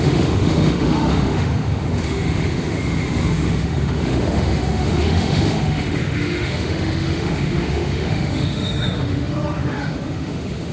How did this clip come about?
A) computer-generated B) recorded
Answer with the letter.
A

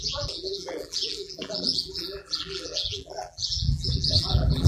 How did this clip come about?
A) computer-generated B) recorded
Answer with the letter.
A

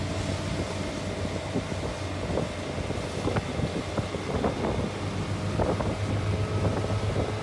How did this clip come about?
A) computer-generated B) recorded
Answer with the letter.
B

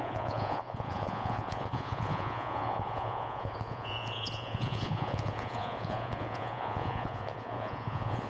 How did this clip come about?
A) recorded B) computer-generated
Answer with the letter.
B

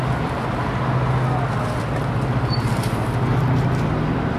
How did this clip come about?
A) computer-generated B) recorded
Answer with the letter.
B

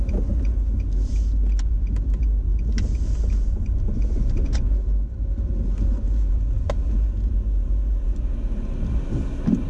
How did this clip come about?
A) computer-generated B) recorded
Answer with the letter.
B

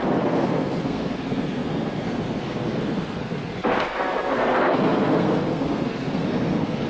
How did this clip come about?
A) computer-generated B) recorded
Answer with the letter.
A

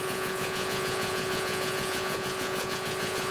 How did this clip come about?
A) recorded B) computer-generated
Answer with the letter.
B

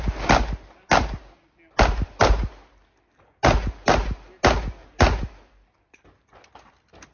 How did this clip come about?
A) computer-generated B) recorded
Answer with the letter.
B